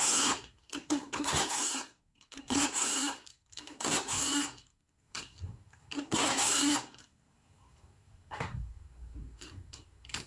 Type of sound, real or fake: fake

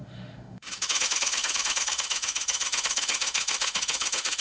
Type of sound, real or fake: fake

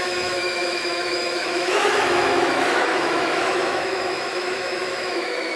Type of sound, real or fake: fake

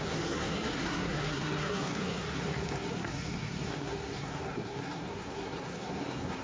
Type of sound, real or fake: fake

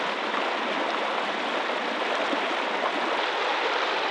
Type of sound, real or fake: real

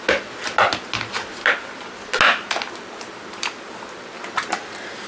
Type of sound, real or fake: real